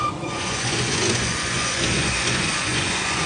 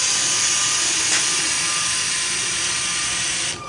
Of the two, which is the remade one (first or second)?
first